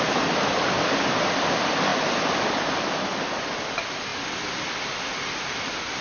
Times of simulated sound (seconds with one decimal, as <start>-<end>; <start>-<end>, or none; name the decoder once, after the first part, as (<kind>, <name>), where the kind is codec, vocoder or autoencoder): none